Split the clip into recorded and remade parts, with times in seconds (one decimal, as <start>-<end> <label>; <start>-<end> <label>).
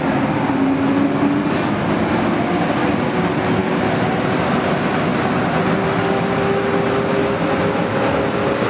0.0-8.7 recorded